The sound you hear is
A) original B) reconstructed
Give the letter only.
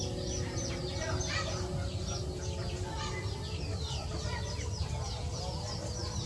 B